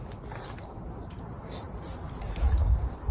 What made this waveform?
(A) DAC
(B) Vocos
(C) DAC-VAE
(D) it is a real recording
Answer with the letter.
D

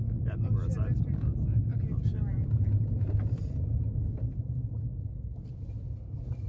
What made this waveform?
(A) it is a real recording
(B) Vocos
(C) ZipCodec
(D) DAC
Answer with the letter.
A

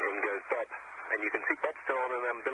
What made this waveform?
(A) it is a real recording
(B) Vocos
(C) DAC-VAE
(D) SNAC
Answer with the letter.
A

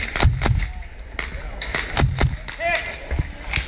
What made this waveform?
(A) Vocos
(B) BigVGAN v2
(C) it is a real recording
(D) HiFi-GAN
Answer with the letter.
C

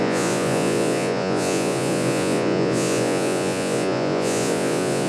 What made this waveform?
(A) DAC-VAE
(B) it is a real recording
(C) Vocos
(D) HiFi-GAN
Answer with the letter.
C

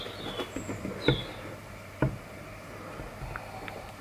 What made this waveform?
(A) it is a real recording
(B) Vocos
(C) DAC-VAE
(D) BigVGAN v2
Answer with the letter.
A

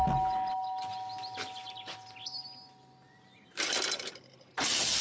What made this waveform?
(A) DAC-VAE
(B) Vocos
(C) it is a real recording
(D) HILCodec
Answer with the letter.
C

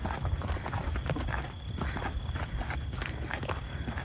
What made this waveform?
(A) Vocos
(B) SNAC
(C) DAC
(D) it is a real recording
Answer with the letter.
D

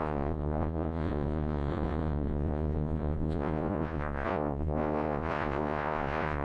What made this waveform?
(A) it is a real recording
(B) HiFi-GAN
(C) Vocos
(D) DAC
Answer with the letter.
C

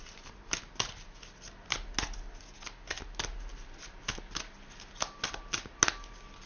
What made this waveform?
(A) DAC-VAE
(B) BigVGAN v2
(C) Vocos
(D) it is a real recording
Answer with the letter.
D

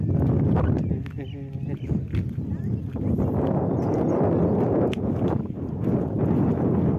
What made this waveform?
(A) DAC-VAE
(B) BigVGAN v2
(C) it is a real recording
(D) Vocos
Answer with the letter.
C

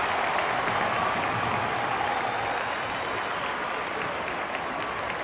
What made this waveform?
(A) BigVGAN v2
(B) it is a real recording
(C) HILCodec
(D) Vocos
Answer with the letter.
B